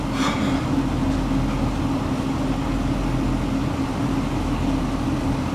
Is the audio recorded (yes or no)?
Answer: yes